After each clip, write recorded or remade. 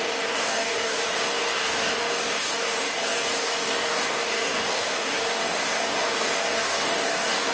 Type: remade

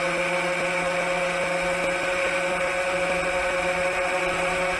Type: recorded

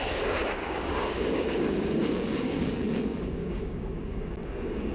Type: remade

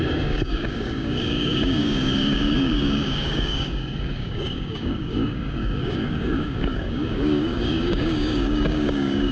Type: remade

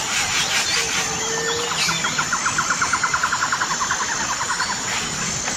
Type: recorded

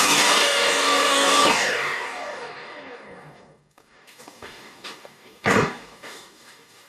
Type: remade